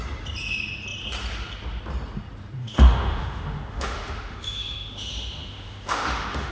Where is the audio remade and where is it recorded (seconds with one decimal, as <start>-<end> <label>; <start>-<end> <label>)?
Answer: 0.0-2.6 recorded; 2.6-6.5 remade